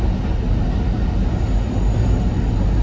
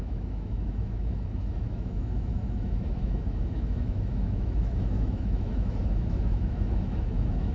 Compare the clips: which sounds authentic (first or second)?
first